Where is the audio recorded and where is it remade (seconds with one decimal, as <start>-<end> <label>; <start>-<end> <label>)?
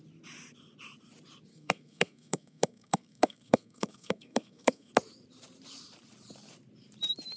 0.0-1.5 recorded; 1.5-4.9 remade; 4.9-7.4 recorded